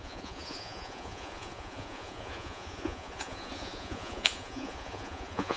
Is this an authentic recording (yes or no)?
no